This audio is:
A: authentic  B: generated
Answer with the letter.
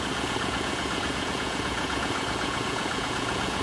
B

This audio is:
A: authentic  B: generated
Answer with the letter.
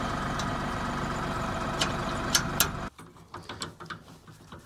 A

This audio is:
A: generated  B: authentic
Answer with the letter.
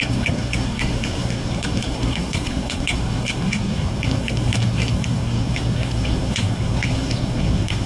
A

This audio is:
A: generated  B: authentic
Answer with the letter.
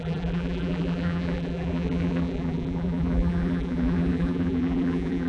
A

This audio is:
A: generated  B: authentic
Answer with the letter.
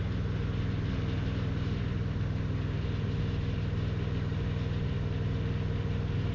B